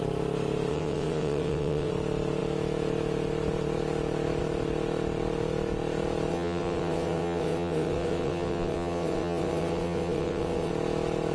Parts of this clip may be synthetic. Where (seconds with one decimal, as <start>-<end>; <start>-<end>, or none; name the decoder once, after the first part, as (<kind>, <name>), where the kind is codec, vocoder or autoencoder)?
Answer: 0.7-1.9 (vocoder, WaveNeXt); 6.3-10.7

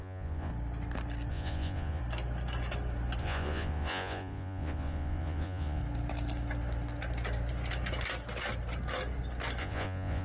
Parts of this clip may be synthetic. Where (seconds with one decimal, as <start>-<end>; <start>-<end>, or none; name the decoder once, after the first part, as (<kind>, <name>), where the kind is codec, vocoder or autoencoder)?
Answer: 0.0-0.5 (vocoder, Vocos); 1.3-2.0; 3.2-5.8; 9.6-10.2